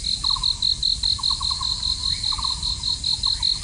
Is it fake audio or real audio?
real